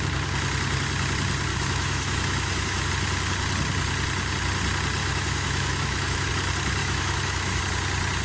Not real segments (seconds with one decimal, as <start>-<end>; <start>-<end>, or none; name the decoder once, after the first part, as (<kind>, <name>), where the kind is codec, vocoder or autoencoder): 1.5-2.9 (autoencoder, DAC-VAE); 5.0-6.3; 6.8-7.6